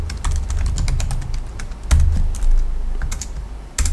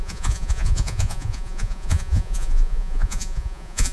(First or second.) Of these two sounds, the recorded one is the first